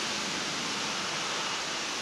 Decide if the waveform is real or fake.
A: real